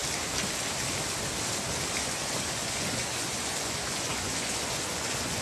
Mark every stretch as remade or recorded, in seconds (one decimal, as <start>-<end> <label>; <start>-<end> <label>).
0.0-2.0 recorded; 2.0-5.4 remade